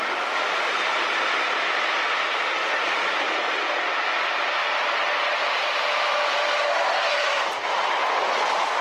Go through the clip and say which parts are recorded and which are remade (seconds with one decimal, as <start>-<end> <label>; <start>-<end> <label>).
0.0-2.6 recorded; 2.6-3.2 remade; 3.2-8.8 recorded